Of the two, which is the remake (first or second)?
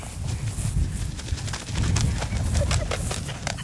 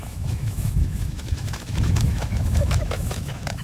second